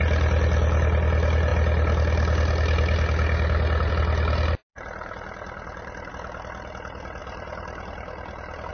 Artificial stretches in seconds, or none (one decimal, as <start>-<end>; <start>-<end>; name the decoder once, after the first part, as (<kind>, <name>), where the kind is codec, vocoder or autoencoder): 4.7-6.1 (vocoder, BigVGAN v2); 7.2-8.7